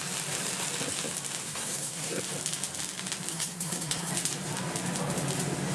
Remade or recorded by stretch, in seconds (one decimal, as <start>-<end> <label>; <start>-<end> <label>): 0.0-1.4 recorded; 1.4-2.2 remade; 2.2-3.3 recorded; 3.3-4.1 remade; 4.1-5.7 recorded